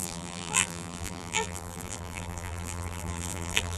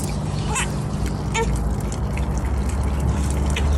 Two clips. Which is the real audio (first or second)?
second